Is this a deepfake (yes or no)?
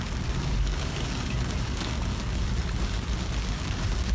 yes